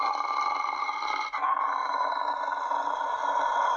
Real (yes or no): yes